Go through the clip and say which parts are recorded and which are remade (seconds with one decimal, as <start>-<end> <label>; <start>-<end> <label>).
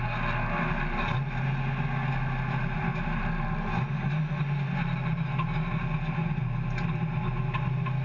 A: 0.0-8.0 recorded